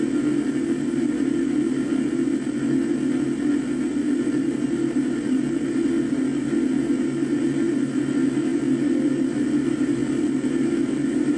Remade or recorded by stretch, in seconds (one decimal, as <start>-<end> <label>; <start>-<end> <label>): 0.0-11.4 recorded

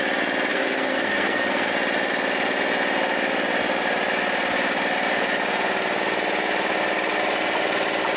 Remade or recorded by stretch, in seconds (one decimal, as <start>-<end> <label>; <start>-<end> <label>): 0.0-0.5 recorded; 0.5-1.7 remade; 1.7-8.2 recorded

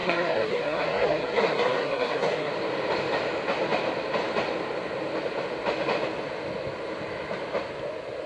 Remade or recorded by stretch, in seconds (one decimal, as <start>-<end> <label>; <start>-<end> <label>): 0.0-2.5 remade; 2.5-8.3 recorded

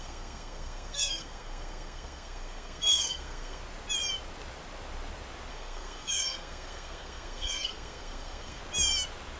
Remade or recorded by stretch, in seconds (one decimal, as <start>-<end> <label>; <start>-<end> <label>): 0.0-3.6 remade; 3.6-5.5 recorded; 5.5-8.6 remade; 8.6-9.4 recorded

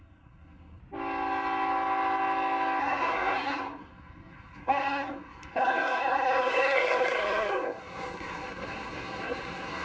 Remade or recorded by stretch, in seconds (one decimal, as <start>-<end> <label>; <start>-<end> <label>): 0.0-0.8 remade; 0.8-2.8 recorded; 2.8-9.8 remade

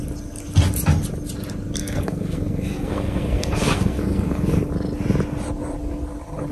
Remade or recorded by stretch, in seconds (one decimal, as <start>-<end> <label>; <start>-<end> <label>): 0.0-1.8 recorded; 1.8-4.7 remade; 4.7-6.5 recorded

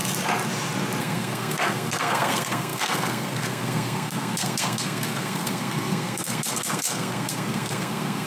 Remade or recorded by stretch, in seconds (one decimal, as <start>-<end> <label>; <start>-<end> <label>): 0.0-1.0 recorded; 1.0-8.3 remade